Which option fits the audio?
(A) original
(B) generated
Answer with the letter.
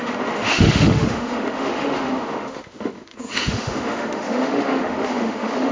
B